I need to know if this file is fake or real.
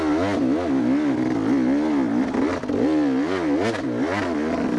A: real